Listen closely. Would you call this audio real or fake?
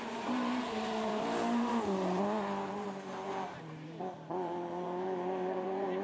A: fake